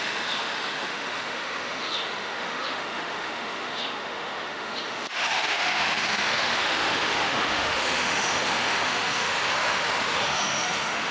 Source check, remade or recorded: remade